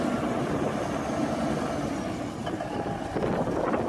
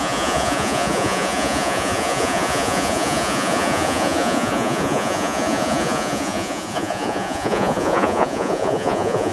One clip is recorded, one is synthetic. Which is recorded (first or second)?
first